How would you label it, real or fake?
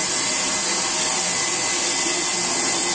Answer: real